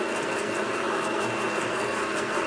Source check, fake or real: fake